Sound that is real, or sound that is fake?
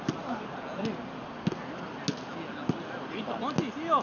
real